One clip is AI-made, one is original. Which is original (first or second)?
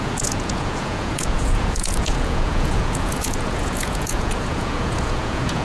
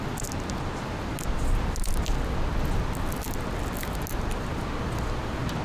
second